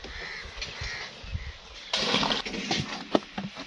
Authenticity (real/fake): real